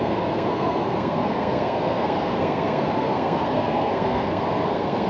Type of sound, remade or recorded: remade